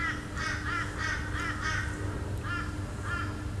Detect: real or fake real